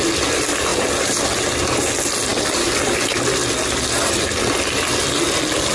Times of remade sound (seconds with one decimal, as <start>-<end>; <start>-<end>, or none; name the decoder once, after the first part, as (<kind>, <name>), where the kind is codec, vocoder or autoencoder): none